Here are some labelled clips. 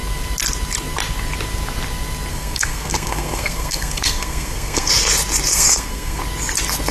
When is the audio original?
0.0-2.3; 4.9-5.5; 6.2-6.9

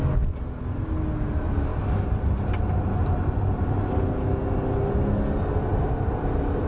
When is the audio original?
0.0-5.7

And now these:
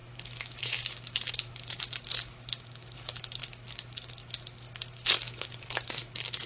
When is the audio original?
none

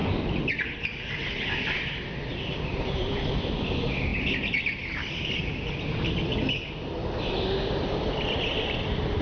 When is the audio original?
4.1-9.2

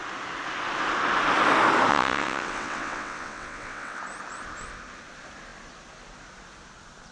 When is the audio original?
0.0-1.9; 4.0-7.1

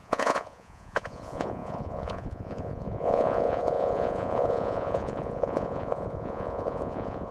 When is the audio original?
none

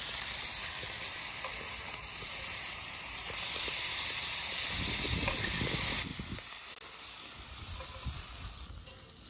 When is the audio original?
0.0-1.5; 4.7-9.3

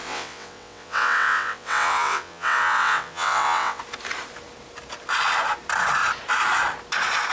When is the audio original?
3.8-7.3